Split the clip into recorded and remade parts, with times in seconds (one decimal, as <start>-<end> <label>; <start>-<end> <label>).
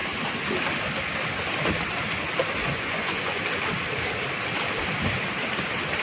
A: 0.0-2.6 recorded; 2.6-3.4 remade; 3.4-6.0 recorded